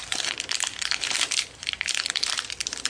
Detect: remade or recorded remade